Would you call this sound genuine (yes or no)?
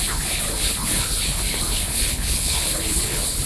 no